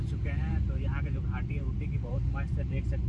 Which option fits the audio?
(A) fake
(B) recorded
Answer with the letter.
A